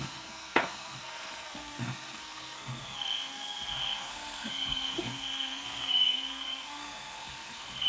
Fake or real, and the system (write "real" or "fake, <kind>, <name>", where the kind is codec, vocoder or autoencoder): fake, codec, SNAC